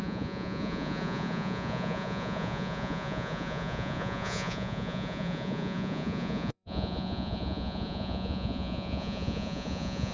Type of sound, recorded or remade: remade